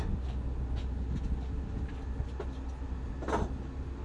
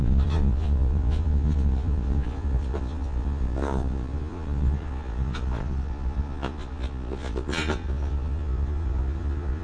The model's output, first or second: second